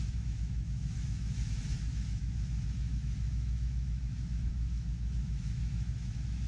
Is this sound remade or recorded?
remade